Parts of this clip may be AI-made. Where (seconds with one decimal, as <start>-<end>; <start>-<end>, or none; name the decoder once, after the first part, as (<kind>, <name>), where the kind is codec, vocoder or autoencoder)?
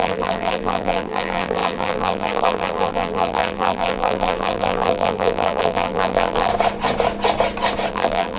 0.0-6.5 (vocoder, BigVGAN v2); 7.9-8.4